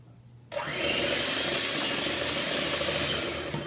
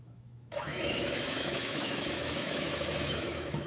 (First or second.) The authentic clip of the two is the first